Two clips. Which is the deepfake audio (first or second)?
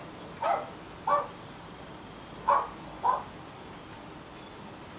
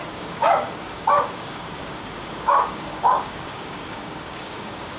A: second